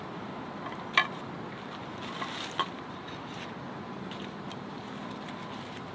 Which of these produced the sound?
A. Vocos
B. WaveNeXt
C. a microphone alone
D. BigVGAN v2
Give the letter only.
C